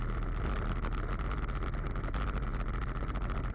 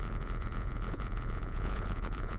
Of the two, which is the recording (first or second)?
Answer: first